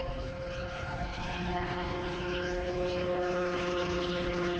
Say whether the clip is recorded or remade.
remade